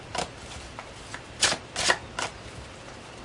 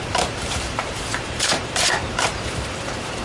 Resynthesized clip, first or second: second